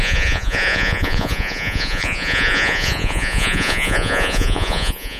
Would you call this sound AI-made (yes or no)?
yes